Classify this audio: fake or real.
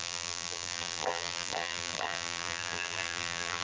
fake